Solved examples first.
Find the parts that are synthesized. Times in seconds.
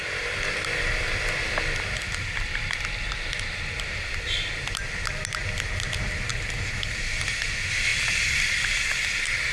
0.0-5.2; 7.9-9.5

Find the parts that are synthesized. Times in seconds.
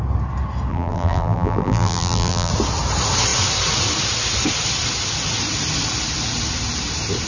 0.7-2.5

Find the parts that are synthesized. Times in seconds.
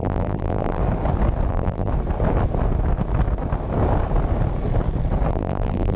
0.0-0.8; 1.5-1.9; 5.3-6.0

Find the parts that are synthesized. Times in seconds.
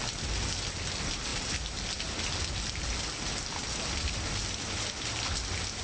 none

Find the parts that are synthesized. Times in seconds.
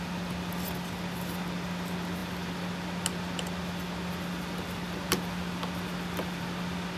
none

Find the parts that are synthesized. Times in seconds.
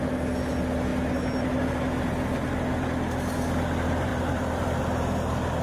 4.1-4.8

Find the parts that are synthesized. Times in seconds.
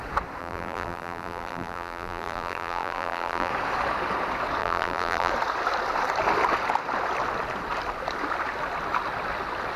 0.4-3.5; 4.6-5.3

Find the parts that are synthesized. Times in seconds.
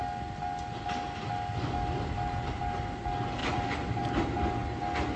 3.4-4.0